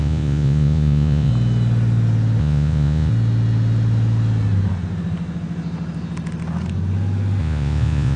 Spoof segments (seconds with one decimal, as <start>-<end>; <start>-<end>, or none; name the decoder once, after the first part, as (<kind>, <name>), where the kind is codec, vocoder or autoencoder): 0.0-1.3 (vocoder, Vocos); 2.4-3.1; 7.4-8.2